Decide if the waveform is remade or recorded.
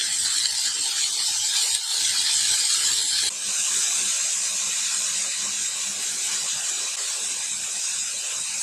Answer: recorded